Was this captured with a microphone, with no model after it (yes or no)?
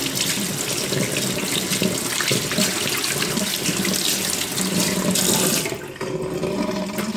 yes